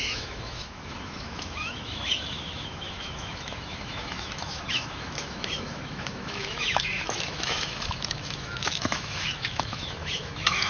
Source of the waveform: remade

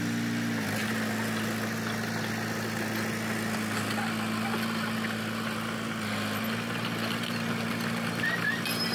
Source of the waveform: recorded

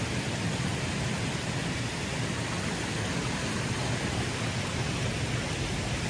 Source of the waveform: recorded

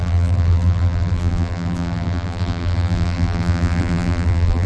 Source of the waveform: remade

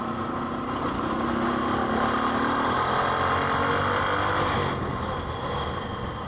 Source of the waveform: recorded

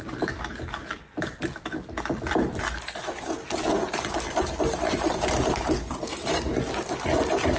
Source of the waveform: recorded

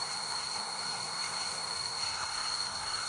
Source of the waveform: remade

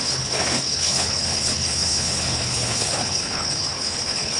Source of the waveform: remade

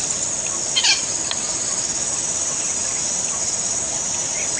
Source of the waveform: recorded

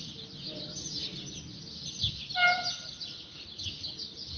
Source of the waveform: recorded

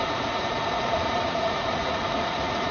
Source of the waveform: remade